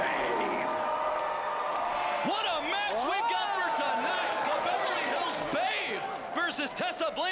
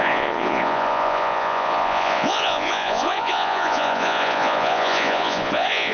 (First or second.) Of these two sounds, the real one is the first